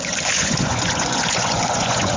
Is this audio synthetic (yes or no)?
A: yes